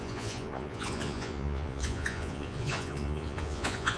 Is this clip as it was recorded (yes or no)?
no